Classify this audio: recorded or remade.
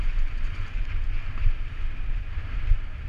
recorded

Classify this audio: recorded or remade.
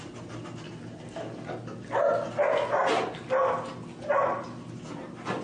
recorded